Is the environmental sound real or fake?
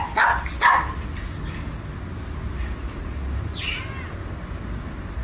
real